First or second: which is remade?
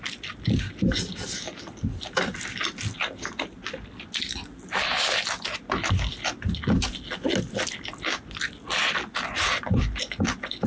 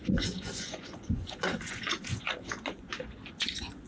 second